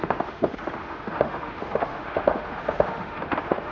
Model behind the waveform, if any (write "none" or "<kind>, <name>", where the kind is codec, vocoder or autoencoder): autoencoder, DAC-VAE